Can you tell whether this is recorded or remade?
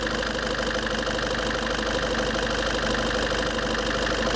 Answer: recorded